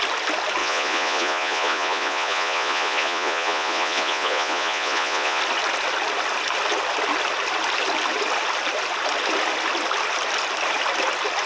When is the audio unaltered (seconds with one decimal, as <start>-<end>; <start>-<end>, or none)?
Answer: 0.0-0.6; 5.4-11.5